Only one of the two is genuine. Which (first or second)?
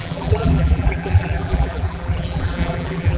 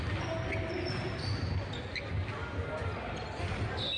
second